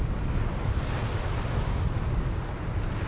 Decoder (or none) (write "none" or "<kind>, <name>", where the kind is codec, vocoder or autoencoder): none